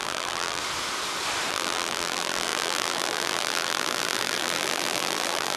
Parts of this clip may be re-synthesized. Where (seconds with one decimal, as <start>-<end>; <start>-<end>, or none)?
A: 0.0-0.6; 1.5-5.6